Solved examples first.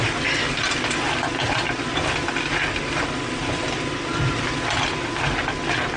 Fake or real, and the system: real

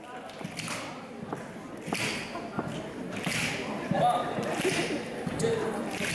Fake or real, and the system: real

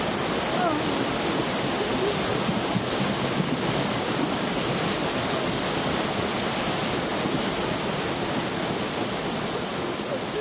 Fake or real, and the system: real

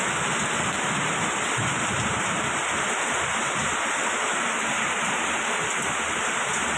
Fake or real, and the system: real